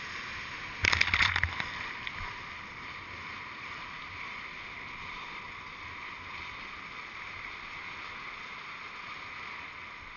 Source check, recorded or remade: recorded